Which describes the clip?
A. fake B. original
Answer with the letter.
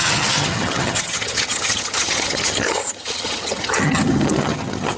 A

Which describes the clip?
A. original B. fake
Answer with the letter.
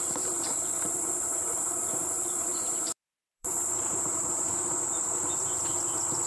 B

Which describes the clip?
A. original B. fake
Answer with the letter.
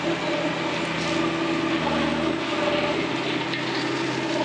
A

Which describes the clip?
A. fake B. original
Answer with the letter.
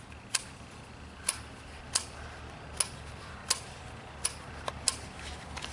B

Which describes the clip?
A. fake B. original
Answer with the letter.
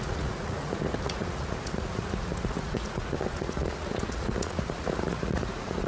A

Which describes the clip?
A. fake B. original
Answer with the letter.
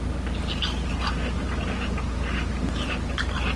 B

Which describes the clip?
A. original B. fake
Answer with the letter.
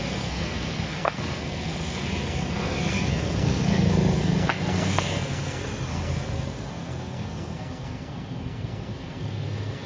B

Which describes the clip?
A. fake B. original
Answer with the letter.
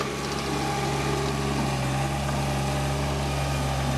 B